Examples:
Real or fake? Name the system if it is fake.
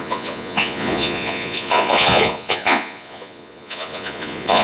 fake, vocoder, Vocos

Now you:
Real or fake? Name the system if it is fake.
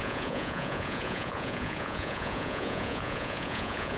fake, vocoder, Vocos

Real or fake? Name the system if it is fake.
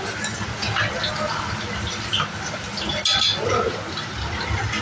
real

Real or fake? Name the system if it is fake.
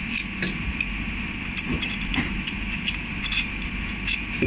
real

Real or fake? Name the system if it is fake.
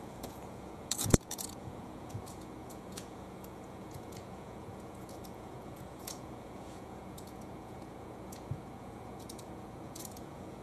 fake, vocoder, Vocos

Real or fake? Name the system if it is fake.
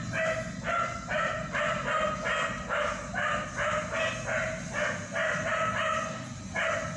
real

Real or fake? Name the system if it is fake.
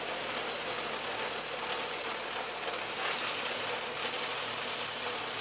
real